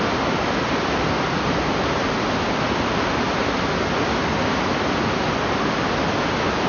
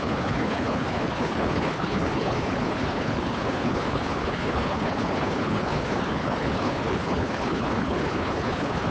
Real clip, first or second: first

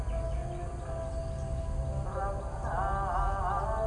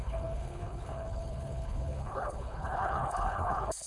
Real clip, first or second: first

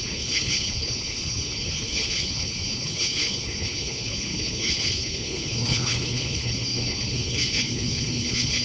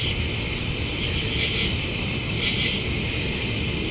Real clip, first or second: second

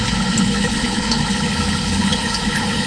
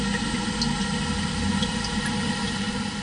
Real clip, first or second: second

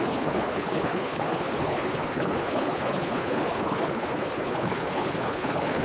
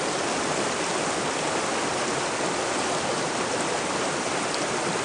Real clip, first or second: second